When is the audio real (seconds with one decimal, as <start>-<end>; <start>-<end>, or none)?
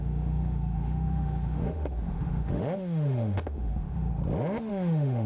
4.1-4.7